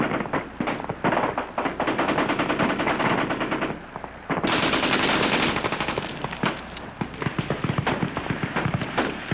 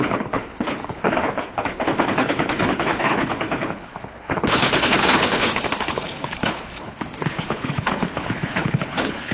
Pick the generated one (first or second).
second